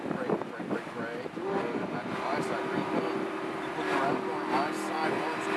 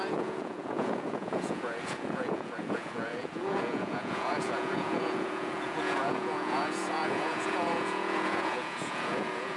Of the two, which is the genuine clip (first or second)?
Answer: first